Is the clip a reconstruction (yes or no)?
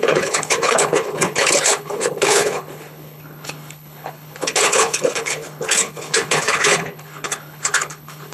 yes